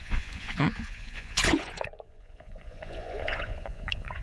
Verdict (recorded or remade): remade